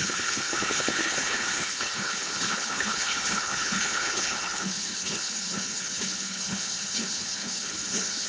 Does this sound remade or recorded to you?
remade